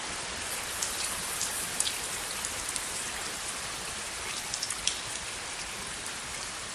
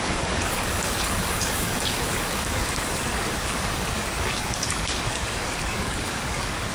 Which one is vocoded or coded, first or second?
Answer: second